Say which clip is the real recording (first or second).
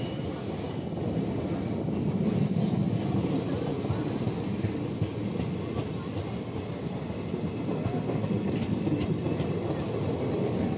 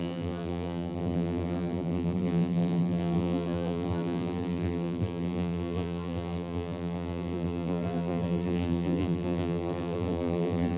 first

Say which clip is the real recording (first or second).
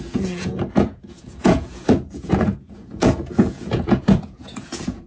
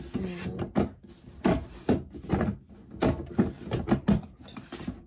second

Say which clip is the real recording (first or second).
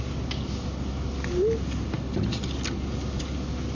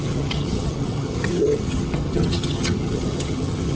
first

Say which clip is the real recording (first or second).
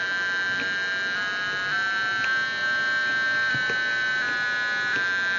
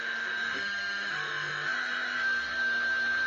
first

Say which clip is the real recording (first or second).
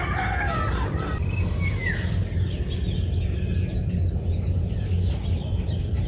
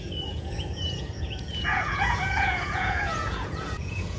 first